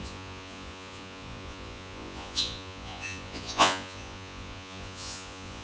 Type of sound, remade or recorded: remade